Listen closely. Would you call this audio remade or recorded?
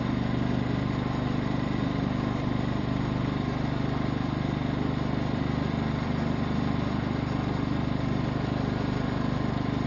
remade